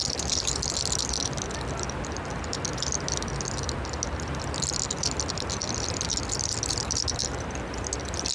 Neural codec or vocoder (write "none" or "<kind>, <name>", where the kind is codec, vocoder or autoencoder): none